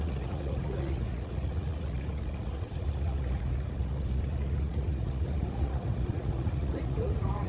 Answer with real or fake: fake